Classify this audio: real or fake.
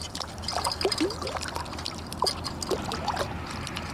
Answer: real